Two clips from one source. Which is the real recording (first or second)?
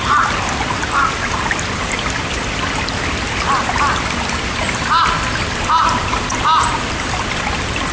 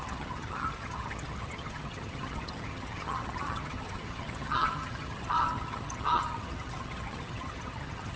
first